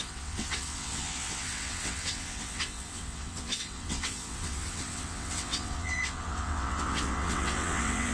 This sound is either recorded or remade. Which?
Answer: remade